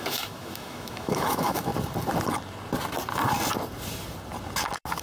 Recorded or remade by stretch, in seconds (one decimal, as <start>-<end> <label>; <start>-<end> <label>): 0.0-1.7 remade; 1.7-5.0 recorded